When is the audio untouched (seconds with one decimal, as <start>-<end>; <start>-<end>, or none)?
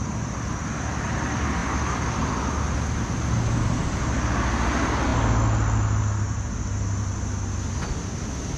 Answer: 0.0-1.6; 2.5-8.6